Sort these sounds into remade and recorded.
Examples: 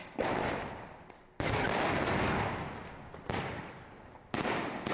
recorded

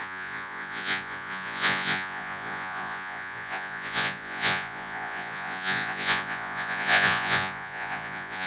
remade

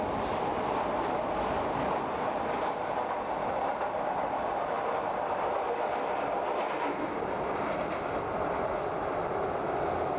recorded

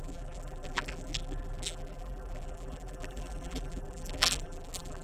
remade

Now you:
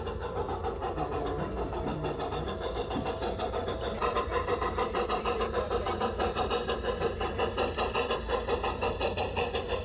remade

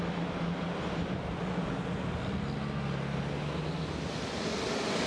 recorded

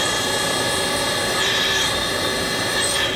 remade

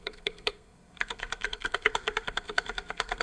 remade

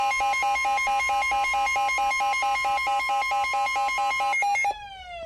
recorded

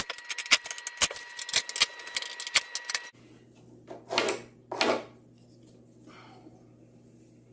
recorded